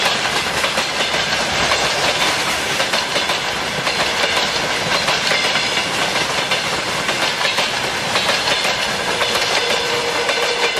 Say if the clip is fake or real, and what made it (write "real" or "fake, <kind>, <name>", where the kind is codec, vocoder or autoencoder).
real